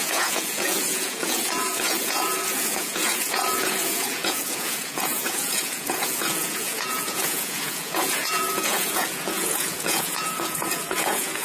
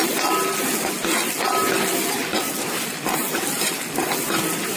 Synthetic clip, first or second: first